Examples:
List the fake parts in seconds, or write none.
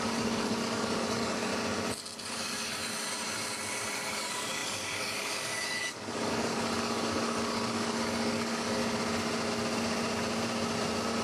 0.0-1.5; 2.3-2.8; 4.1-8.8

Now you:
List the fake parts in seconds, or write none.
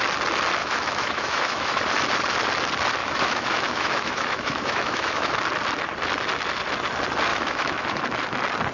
0.6-1.8; 3.0-5.4; 7.3-8.0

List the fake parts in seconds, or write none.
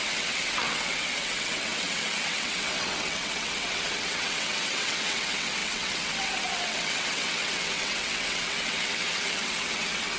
0.0-10.2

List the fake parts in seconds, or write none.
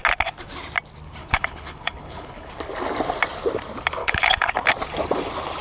1.2-2.5; 4.0-4.5